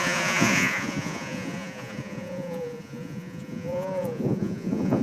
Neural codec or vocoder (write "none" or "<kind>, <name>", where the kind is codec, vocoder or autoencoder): vocoder, Vocos